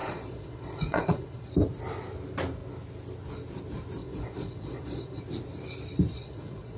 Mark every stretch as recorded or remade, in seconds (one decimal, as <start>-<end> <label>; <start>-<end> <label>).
0.0-1.5 remade; 1.5-4.0 recorded; 4.0-5.2 remade; 5.2-6.1 recorded; 6.1-6.8 remade